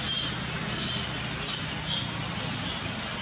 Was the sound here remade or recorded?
recorded